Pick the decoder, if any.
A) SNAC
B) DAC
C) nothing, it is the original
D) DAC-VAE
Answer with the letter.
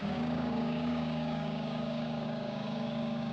B